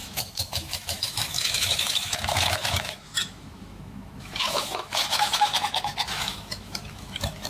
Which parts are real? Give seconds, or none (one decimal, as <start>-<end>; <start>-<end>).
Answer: none

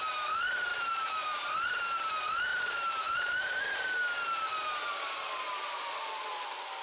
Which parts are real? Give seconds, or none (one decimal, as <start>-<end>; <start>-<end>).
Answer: 0.0-0.7; 2.1-2.5; 3.6-6.8

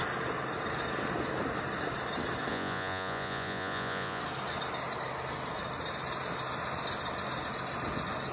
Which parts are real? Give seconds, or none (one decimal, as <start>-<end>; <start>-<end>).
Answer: 0.0-2.5; 4.2-8.3

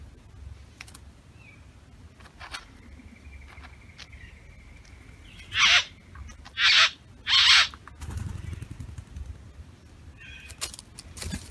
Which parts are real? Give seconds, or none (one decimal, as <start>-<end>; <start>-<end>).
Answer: 0.0-11.5

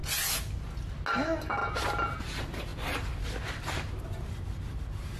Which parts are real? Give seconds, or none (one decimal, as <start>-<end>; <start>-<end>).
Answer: 0.0-5.2

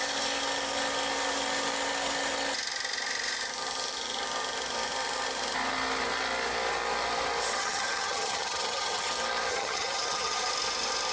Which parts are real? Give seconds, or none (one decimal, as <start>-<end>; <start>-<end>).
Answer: 0.0-7.6; 9.1-9.5; 10.5-11.1

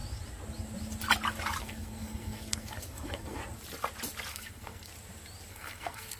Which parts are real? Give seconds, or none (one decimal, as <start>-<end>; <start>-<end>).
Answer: 0.0-1.6; 3.4-4.3; 4.9-5.5